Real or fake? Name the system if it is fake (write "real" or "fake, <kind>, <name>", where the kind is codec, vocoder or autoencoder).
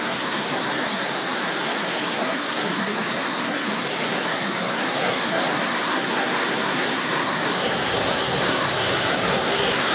fake, codec, SNAC